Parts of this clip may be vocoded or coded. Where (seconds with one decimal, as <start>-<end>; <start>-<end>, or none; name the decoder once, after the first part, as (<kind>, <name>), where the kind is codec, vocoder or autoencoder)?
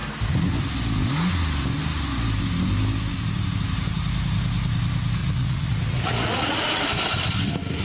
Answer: 5.2-6.7 (vocoder, Vocos)